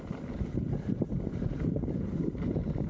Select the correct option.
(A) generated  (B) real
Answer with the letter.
B